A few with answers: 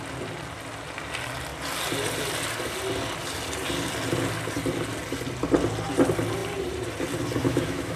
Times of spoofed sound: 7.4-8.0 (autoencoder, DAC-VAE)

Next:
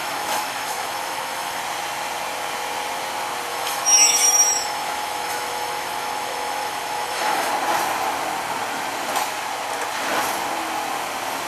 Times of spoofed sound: 0.0-1.6 (autoencoder, DAC-VAE); 3.5-7.5